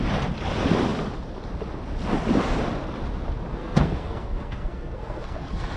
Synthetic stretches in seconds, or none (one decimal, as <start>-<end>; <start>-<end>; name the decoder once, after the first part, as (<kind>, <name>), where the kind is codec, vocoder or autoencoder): 3.5-5.8 (codec, SNAC)